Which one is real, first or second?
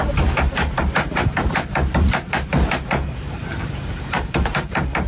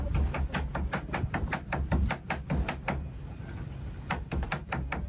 second